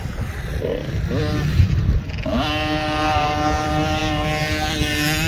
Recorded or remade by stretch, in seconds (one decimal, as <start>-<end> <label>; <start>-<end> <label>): 0.0-1.5 recorded; 1.5-2.1 remade; 2.1-5.3 recorded